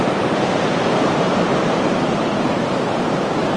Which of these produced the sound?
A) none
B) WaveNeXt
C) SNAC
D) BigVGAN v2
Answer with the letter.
D